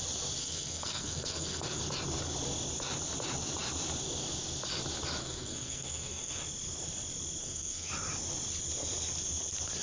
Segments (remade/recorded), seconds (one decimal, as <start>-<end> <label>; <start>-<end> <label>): 0.0-0.4 recorded; 0.4-1.8 remade; 1.8-5.2 recorded; 5.2-6.4 remade; 6.4-7.4 recorded; 7.4-7.9 remade; 7.9-9.8 recorded